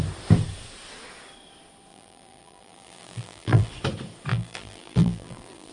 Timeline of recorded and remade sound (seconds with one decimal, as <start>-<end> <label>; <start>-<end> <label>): 0.0-1.9 recorded; 1.9-3.7 remade; 3.7-4.3 recorded; 4.3-5.7 remade